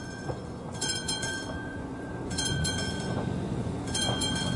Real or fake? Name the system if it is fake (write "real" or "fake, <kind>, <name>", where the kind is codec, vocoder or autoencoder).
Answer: fake, vocoder, Vocos